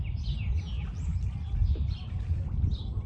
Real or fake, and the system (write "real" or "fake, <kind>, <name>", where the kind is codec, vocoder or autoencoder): real